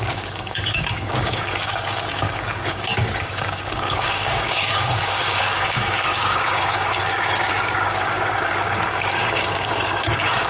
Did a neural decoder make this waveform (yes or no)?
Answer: yes